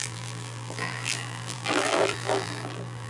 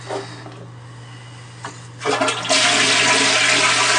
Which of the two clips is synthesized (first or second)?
first